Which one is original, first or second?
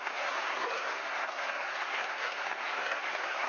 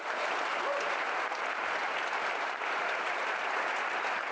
second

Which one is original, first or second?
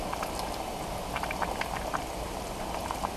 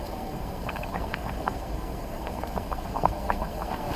first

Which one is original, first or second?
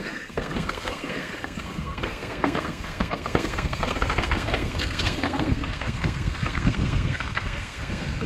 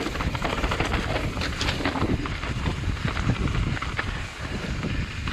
second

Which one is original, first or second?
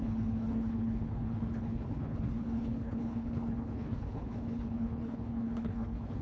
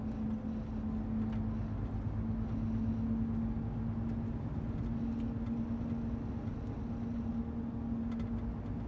second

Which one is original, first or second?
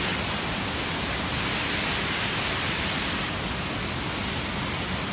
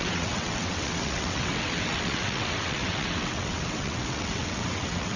first